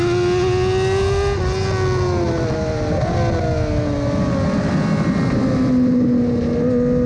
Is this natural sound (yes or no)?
yes